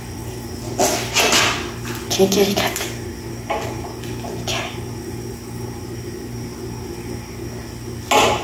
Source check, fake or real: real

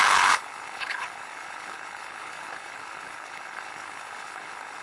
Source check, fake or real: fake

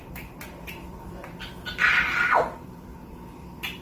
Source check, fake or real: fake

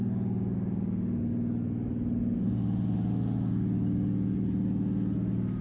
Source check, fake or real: real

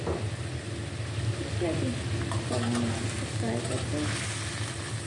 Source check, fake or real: real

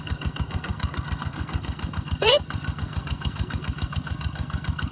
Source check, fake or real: fake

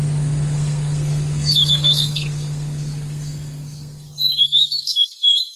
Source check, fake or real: fake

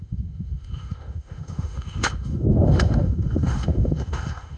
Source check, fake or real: fake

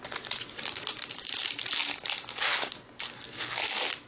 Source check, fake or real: real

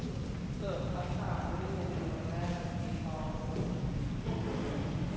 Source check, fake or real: real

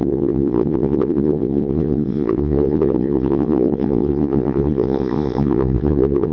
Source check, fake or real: fake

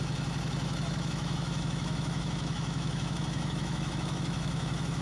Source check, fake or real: fake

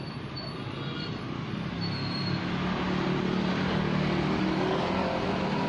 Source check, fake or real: real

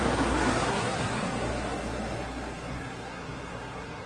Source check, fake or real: fake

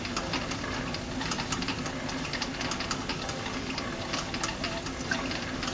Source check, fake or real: real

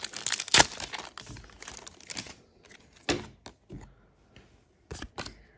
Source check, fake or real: real